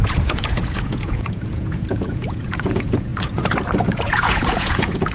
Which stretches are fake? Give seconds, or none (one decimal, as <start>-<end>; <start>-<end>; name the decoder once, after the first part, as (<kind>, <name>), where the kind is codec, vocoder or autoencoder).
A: 0.0-3.1 (vocoder, Vocos); 3.8-5.1